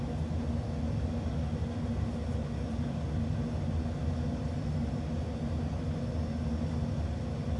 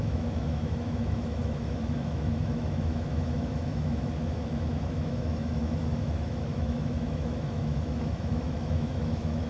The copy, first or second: second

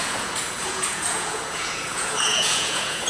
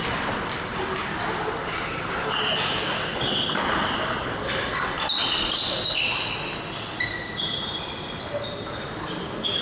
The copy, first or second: first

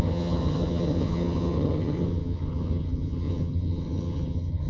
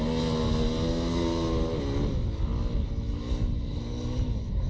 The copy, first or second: first